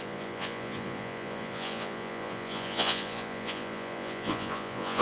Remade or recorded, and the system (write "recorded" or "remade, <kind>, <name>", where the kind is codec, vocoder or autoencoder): remade, vocoder, Vocos